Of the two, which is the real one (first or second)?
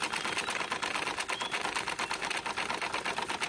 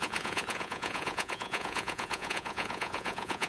first